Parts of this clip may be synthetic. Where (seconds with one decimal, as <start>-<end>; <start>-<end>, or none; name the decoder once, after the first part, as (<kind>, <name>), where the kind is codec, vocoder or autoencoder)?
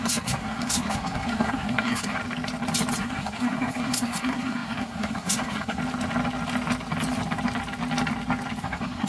0.0-2.2 (codec, SNAC); 3.0-5.8; 8.6-9.1